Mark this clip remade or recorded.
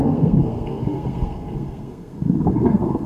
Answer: remade